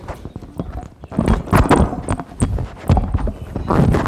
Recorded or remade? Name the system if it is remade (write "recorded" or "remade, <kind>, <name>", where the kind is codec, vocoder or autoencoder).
recorded